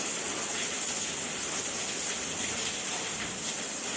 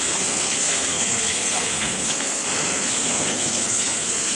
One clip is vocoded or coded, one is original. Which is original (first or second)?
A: first